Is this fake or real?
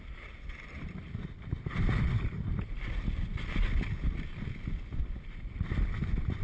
real